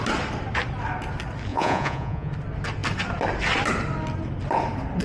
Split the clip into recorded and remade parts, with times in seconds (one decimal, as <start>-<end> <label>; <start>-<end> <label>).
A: 0.0-1.5 recorded; 1.5-2.3 remade; 2.3-5.0 recorded